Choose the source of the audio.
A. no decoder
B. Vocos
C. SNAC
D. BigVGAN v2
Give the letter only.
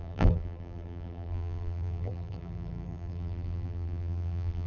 D